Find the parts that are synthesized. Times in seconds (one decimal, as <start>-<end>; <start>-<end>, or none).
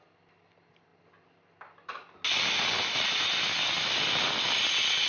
none